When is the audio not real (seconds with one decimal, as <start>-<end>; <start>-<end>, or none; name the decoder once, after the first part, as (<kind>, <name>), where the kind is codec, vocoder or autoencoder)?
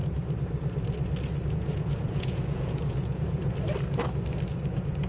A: 1.5-3.4 (vocoder, Vocos); 4.5-5.1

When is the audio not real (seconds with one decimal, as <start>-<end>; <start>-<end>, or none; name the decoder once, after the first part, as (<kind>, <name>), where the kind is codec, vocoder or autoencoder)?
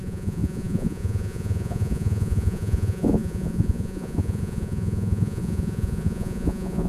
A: 0.0-6.9 (vocoder, Vocos)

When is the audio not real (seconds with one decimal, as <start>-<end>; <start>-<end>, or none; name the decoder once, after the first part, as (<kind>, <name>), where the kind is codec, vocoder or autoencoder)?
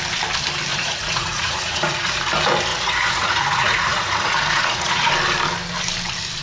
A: 0.7-2.2 (vocoder, Vocos); 2.7-5.1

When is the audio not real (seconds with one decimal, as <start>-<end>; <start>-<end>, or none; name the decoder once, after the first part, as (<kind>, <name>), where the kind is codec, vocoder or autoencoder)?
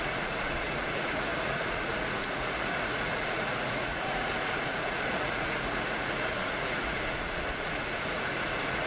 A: 0.0-8.9 (vocoder, Vocos)